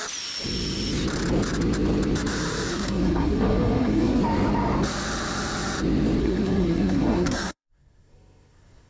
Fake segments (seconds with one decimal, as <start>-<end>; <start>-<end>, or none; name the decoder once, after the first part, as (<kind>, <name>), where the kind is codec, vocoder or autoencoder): 2.7-4.2 (codec, SNAC); 6.2-8.9